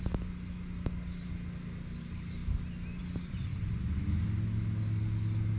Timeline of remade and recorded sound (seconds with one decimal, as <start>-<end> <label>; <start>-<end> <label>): 0.0-5.6 recorded